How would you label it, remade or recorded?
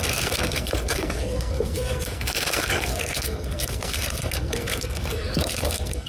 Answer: remade